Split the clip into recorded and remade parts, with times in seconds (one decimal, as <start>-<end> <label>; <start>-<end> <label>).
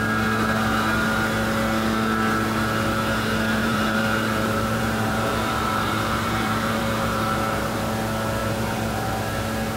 0.0-3.6 recorded; 3.6-7.9 remade; 7.9-8.4 recorded; 8.4-9.1 remade; 9.1-9.8 recorded